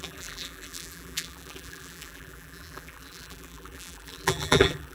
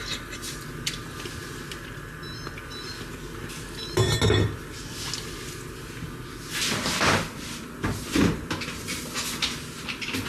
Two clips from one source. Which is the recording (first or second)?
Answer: second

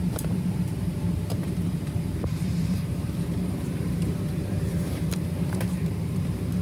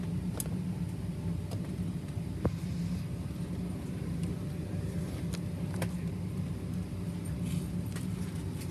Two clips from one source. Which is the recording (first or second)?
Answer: second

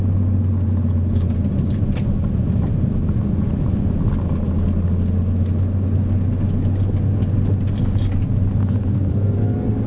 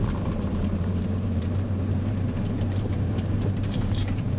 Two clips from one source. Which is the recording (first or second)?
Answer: first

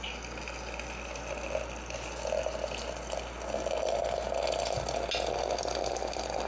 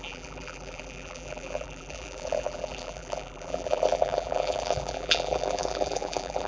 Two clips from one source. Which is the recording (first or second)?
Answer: first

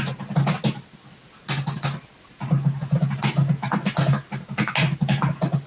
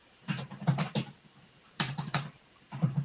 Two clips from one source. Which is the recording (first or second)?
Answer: first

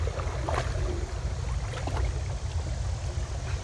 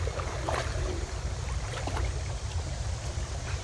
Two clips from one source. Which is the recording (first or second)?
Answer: first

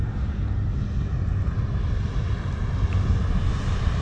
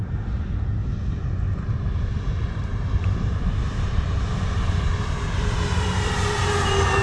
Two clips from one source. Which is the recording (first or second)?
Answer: first